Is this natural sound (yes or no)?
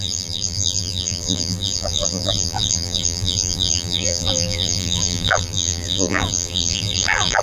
no